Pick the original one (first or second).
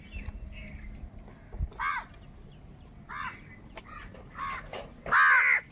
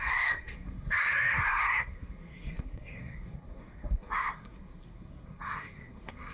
first